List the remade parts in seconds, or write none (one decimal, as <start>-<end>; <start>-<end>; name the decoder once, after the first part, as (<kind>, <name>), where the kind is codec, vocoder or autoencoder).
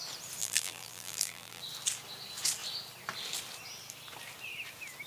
0.4-1.6 (vocoder, BigVGAN v2)